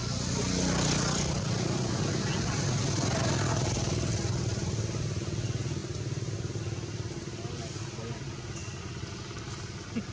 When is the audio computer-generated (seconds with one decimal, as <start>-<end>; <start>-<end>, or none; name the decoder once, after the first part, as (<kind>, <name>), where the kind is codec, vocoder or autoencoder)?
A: none